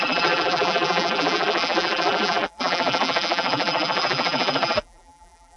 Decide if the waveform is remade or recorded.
remade